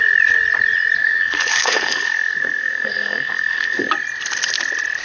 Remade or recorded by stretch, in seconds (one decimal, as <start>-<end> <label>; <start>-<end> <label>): 0.0-1.0 recorded; 1.0-3.9 remade; 3.9-5.0 recorded